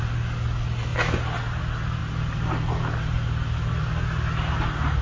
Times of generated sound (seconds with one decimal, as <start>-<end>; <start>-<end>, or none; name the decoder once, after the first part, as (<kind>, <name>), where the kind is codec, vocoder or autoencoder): none